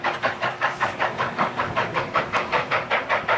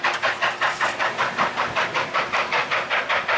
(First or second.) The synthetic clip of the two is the first